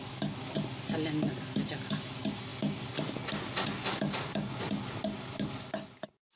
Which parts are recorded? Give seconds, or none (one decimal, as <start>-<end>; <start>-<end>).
0.0-6.4